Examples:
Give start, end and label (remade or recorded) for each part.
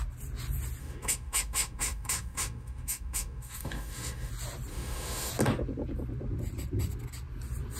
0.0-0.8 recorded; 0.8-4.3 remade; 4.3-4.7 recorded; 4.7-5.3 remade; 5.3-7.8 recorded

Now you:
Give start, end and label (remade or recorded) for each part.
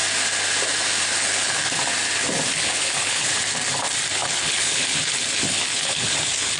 0.0-1.1 recorded; 1.1-1.6 remade; 1.6-2.5 recorded; 2.5-3.3 remade; 3.3-4.1 recorded; 4.1-6.6 remade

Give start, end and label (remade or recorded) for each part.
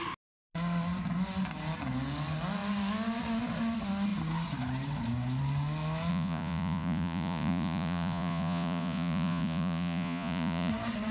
0.0-6.1 recorded; 6.1-10.7 remade; 10.7-11.1 recorded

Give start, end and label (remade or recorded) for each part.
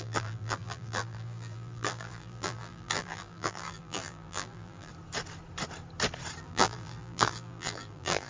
0.0-4.9 remade; 4.9-6.4 recorded; 6.4-8.3 remade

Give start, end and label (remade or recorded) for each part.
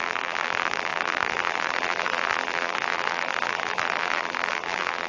0.0-5.1 remade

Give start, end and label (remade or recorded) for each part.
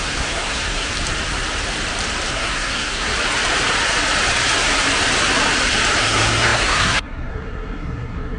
0.0-0.9 remade; 0.9-2.3 recorded; 2.3-3.1 remade; 3.1-6.0 recorded; 6.0-8.4 remade